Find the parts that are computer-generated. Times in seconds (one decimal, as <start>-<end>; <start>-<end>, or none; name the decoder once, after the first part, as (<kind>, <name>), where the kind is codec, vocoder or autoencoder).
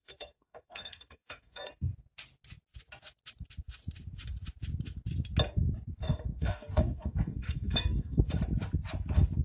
0.0-1.7 (codec, SNAC); 6.0-8.2